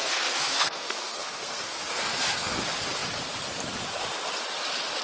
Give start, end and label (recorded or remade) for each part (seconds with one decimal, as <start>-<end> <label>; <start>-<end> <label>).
0.0-2.6 remade; 2.6-5.0 recorded